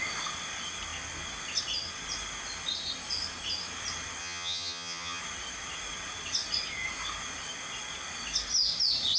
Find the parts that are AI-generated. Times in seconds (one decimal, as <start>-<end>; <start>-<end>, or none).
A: 4.2-5.2